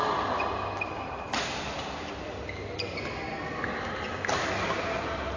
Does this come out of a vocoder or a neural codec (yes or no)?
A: no